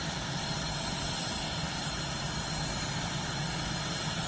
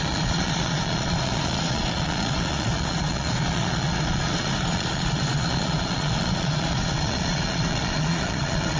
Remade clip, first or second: second